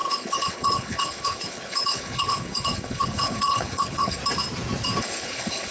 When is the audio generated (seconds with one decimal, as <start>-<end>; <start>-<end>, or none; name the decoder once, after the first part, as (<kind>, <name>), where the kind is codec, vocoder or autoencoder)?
0.0-4.2 (codec, HILCodec); 5.0-5.7